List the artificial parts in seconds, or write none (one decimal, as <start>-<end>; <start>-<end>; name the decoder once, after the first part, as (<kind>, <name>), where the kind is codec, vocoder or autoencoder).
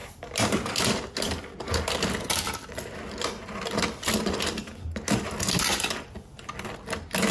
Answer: 0.0-0.7 (vocoder, BigVGAN v2)